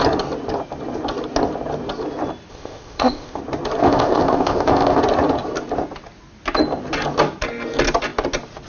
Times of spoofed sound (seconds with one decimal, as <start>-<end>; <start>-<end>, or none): 2.5-3.4; 3.8-5.0